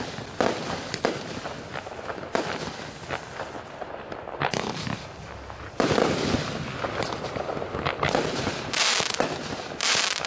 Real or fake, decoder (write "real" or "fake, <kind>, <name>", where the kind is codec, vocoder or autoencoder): real